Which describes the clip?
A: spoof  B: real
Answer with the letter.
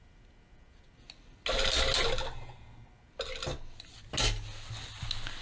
B